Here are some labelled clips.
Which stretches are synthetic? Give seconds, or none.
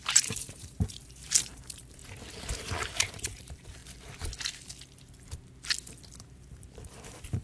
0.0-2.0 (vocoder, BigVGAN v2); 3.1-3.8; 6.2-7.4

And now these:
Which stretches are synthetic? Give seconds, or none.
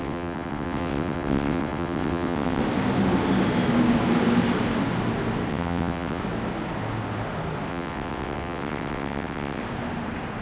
0.0-2.6 (vocoder, WaveNeXt); 5.5-6.2; 7.7-9.6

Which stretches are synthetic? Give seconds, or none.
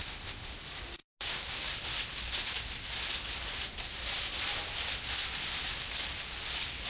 0.0-0.5 (codec, ZipCodec)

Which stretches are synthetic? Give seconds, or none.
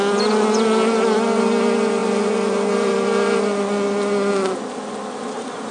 2.0-2.9 (vocoder, BigVGAN v2)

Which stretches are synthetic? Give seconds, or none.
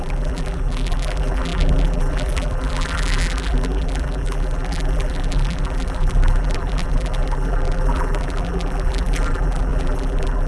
0.0-10.5 (vocoder, BigVGAN v2)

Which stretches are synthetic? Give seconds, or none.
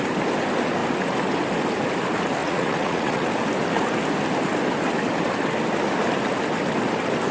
2.4-3.3 (vocoder, Vocos)